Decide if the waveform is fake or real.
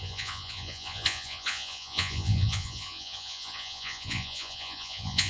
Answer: fake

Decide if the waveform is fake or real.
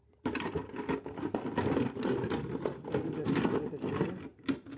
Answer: real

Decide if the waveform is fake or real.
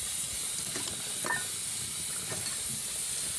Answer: real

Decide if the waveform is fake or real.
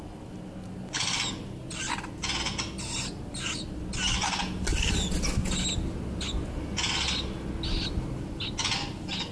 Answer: real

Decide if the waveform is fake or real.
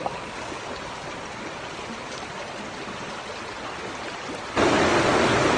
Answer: real